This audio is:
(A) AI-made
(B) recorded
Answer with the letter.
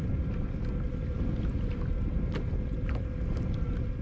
B